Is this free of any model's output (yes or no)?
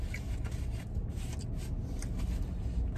yes